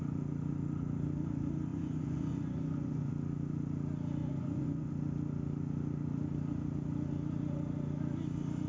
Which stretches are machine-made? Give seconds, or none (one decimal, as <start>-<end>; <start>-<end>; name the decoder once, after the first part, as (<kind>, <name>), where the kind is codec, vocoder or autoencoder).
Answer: 1.7-3.1 (vocoder, Vocos); 4.2-4.9

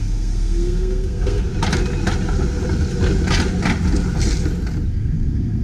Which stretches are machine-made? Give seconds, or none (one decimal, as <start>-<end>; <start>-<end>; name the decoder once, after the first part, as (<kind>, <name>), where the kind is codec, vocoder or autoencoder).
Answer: 0.0-1.5 (codec, SNAC); 4.9-5.6

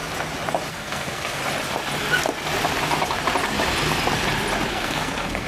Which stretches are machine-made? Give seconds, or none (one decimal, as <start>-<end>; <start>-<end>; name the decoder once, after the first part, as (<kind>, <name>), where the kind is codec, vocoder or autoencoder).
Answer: 0.7-1.4 (codec, SNAC); 4.7-5.5

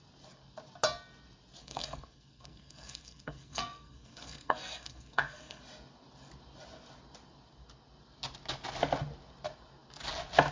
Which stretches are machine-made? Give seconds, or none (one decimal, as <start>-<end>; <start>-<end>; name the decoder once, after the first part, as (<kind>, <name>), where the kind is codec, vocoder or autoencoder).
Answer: 1.6-5.6 (codec, SNAC)

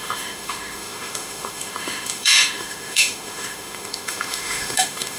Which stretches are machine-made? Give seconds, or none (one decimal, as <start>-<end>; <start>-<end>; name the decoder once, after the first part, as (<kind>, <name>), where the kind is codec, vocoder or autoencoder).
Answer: 0.0-5.2 (autoencoder, DAC-VAE)

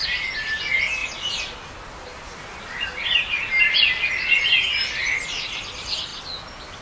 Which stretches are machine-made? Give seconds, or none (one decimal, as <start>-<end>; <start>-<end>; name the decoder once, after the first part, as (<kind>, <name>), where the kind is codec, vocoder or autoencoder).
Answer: none